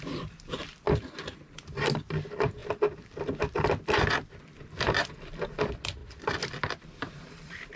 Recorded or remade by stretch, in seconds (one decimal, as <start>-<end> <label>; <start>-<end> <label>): 0.0-2.6 remade; 2.6-4.9 recorded; 4.9-7.8 remade